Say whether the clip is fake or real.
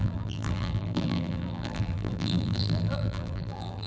fake